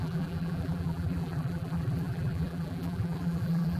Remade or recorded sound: remade